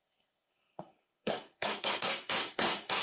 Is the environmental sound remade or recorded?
remade